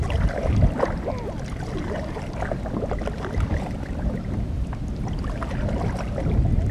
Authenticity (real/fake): real